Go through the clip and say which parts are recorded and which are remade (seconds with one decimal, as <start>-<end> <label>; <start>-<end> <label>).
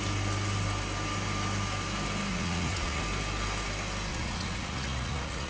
0.0-2.3 recorded; 2.3-3.0 remade; 3.0-4.1 recorded; 4.1-5.5 remade